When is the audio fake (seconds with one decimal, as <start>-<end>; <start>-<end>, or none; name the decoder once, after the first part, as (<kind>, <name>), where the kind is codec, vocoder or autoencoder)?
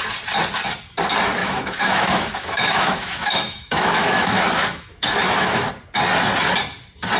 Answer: 1.4-5.7 (autoencoder, DAC-VAE)